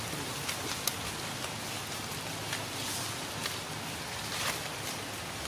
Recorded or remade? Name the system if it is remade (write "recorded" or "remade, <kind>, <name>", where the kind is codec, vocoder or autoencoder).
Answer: recorded